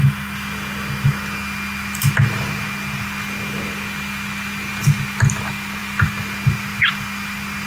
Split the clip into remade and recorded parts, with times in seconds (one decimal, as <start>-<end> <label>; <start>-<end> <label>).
0.0-7.7 recorded